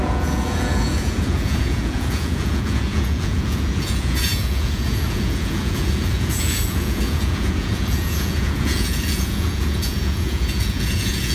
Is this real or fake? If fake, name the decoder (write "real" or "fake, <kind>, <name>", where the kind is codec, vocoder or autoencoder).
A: fake, vocoder, Vocos